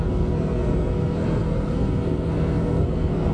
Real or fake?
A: fake